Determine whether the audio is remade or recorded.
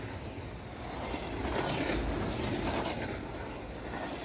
recorded